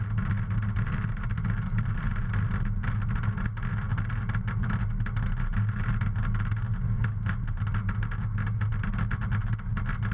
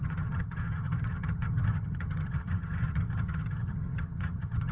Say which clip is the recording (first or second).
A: first